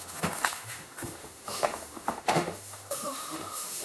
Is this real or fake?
fake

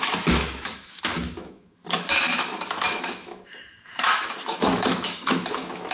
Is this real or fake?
fake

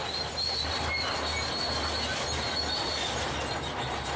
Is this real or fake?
real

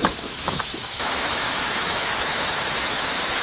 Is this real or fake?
fake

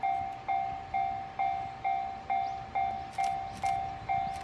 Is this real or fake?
real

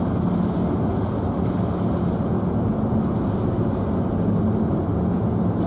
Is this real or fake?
real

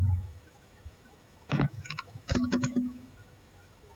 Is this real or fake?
fake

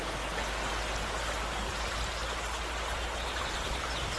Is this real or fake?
real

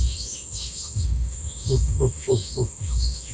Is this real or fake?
fake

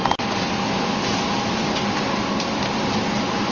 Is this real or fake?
real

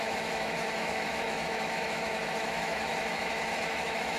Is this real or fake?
fake